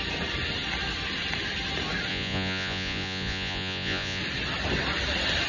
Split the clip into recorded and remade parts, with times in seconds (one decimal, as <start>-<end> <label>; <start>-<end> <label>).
0.0-2.1 recorded; 2.1-4.2 remade; 4.2-5.5 recorded